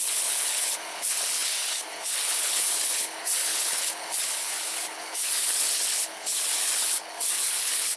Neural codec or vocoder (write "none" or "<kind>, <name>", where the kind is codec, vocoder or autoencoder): codec, HILCodec